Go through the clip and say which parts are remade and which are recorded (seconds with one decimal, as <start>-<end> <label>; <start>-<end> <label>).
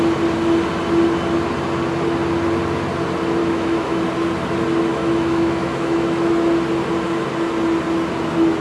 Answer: 0.0-3.4 recorded; 3.4-4.0 remade; 4.0-4.9 recorded; 4.9-6.3 remade; 6.3-8.6 recorded